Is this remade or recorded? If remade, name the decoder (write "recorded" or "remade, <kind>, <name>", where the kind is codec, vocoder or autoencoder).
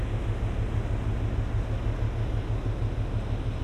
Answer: recorded